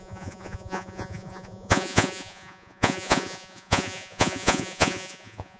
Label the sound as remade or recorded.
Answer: remade